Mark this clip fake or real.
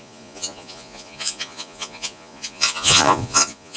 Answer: fake